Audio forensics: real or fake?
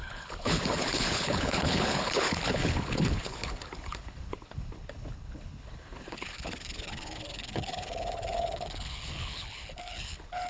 fake